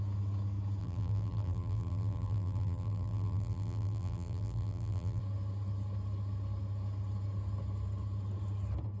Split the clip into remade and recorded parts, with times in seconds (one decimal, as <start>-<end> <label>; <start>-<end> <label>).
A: 0.0-0.8 recorded; 0.8-5.2 remade; 5.2-9.0 recorded